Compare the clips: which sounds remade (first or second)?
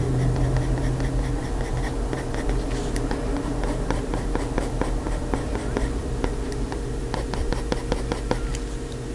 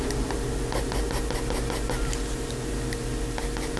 first